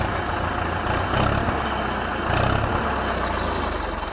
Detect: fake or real real